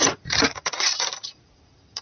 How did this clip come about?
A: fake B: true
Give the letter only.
A